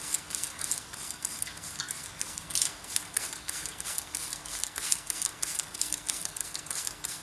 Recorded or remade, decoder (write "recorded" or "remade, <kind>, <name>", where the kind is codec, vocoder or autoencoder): remade, codec, SNAC